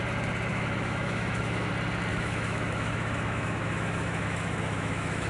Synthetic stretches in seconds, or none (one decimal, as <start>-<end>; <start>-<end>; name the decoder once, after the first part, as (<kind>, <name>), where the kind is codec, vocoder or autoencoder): 0.5-1.7 (autoencoder, DAC-VAE); 2.1-5.3